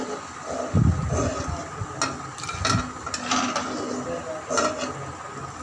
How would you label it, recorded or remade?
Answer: recorded